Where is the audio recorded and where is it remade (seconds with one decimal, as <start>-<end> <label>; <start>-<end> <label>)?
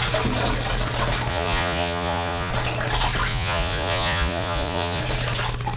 0.0-1.3 recorded; 1.3-2.5 remade; 2.5-3.3 recorded; 3.3-5.0 remade; 5.0-5.8 recorded